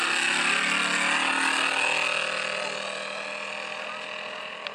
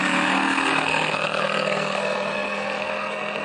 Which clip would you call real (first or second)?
first